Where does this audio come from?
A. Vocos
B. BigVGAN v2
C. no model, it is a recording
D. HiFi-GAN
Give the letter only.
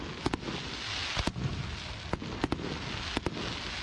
C